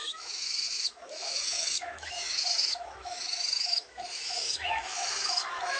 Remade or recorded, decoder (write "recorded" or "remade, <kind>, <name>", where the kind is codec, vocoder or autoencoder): remade, autoencoder, DAC-VAE